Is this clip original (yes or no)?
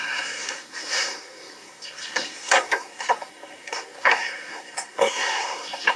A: no